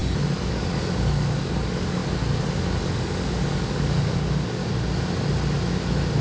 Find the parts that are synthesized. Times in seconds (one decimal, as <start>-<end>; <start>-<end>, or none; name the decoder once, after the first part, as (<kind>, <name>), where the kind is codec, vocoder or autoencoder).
0.5-2.0 (codec, DAC); 2.8-4.6